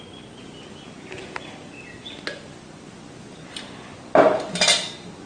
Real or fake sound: real